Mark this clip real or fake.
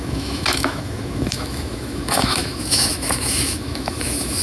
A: fake